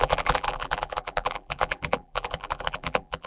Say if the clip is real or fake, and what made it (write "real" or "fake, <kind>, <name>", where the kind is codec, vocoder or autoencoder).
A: fake, vocoder, BigVGAN v2